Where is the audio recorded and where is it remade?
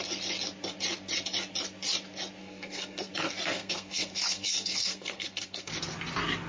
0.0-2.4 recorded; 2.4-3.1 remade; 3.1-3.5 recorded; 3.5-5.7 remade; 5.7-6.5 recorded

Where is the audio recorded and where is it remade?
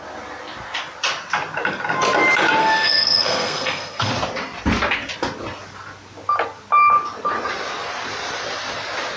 0.0-2.6 recorded; 2.6-4.1 remade; 4.1-9.2 recorded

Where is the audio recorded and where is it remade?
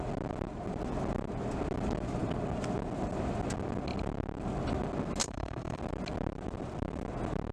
0.0-5.2 recorded; 5.2-5.8 remade; 5.8-7.5 recorded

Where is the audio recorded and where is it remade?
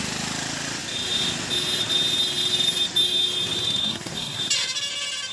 0.0-3.8 recorded; 3.8-4.4 remade; 4.4-5.3 recorded